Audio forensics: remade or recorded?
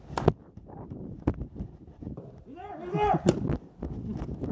recorded